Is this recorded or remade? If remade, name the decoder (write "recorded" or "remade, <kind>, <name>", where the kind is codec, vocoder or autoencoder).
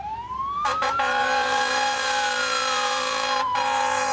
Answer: remade, vocoder, BigVGAN v2